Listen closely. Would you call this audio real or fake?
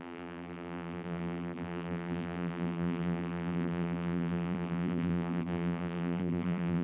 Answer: fake